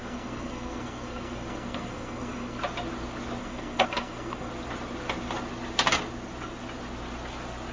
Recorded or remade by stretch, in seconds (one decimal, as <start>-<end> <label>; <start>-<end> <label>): 0.0-2.6 remade; 2.6-3.4 recorded; 3.4-4.5 remade; 4.5-7.7 recorded